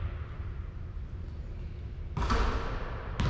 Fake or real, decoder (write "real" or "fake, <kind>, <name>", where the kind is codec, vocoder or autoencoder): real